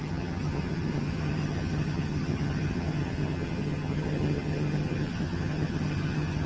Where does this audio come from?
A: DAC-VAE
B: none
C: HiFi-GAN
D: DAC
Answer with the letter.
C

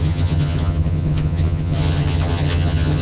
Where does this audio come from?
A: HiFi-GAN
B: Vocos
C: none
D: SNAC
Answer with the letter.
A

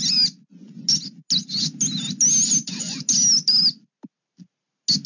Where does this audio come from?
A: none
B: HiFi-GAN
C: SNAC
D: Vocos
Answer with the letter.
A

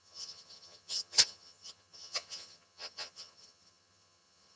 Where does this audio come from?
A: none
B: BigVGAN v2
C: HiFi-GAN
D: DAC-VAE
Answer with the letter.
C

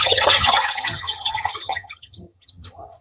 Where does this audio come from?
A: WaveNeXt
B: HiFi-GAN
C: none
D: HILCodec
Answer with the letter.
B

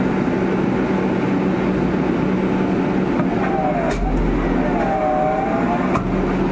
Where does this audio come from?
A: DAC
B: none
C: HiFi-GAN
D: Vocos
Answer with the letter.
B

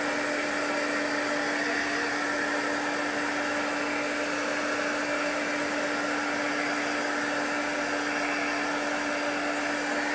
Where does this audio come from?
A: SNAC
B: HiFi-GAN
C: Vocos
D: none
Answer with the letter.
D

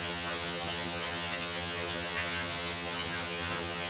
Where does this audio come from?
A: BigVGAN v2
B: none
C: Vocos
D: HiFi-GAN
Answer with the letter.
D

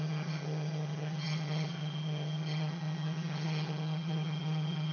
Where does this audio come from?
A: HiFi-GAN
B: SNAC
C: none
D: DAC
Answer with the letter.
A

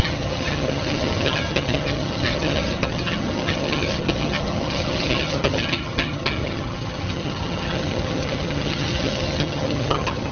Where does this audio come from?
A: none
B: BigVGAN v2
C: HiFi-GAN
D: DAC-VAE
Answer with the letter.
C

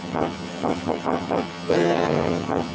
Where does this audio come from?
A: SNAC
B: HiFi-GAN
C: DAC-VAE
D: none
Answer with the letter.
B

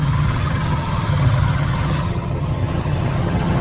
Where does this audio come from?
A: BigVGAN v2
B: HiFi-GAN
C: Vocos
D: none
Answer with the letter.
B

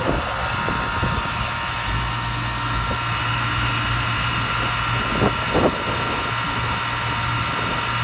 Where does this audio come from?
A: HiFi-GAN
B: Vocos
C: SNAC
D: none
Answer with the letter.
D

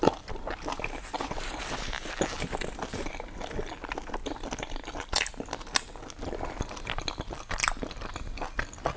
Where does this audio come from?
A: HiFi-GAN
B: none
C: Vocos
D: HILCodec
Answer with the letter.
B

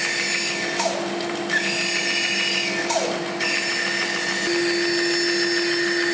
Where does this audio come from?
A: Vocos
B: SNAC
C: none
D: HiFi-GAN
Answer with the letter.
C